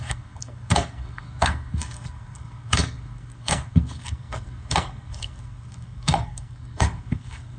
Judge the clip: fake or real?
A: fake